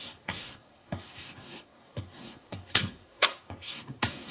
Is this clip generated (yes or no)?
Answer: yes